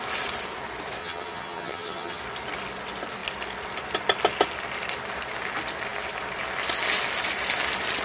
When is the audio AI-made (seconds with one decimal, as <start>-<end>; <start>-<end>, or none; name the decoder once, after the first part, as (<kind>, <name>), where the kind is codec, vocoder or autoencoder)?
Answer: 1.0-2.2 (vocoder, HiFi-GAN)